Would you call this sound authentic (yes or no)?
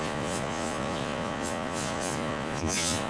no